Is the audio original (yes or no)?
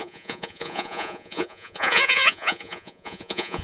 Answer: no